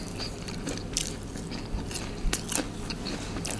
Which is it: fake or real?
real